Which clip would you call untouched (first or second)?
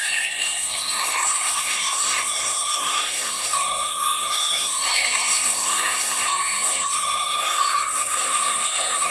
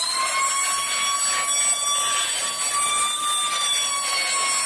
second